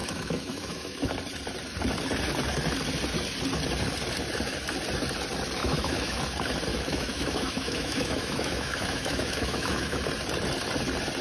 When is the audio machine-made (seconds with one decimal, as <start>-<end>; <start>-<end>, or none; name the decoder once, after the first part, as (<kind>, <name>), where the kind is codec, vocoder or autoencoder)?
0.0-1.1 (autoencoder, DAC-VAE); 5.6-6.2; 6.7-10.0